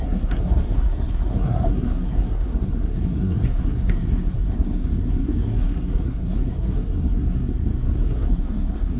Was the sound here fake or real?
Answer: fake